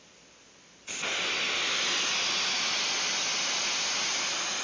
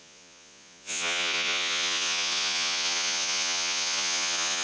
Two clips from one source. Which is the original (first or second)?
first